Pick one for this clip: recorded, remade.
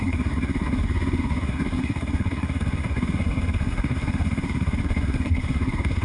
remade